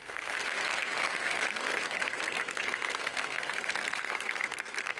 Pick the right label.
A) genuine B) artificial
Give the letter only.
B